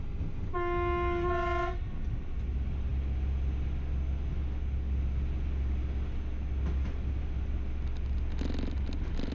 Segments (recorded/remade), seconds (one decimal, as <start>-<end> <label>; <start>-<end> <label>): 0.0-9.3 recorded